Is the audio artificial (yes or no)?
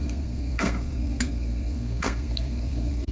yes